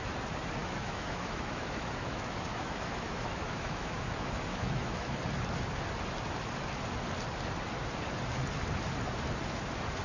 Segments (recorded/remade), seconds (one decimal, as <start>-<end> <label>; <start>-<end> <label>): 0.0-0.6 recorded; 0.6-5.2 remade; 5.2-10.0 recorded